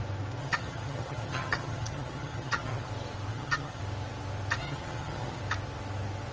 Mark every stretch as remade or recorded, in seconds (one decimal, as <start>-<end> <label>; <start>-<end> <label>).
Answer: 0.0-0.4 recorded; 0.4-2.9 remade; 2.9-3.3 recorded; 3.3-3.8 remade; 3.8-4.6 recorded; 4.6-5.4 remade; 5.4-6.3 recorded